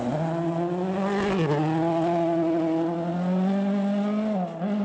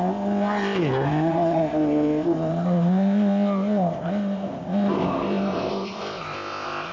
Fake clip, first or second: second